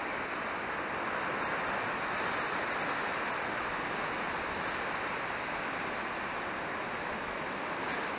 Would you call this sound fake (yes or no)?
no